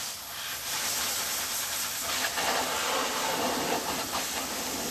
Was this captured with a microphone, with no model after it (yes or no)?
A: yes